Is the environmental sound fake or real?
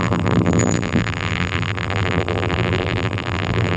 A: fake